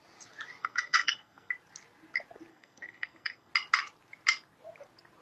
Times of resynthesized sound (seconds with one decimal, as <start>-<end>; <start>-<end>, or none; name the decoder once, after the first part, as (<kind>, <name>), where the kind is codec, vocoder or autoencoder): 0.6-1.5 (codec, SNAC); 2.5-3.5